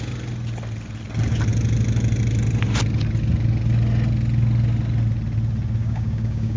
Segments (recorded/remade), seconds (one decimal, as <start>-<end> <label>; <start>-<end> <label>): 0.0-5.8 recorded; 5.8-6.6 remade